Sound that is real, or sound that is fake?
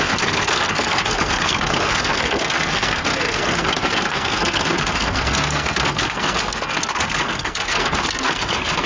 fake